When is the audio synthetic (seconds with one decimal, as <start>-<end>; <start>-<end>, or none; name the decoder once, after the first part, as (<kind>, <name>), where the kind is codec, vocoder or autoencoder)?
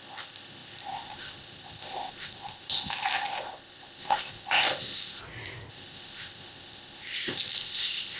0.0-5.2 (codec, ZipCodec); 5.7-8.2